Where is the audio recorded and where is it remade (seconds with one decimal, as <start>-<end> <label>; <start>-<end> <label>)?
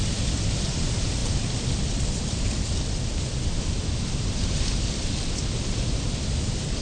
0.0-1.2 recorded; 1.2-5.3 remade; 5.3-6.8 recorded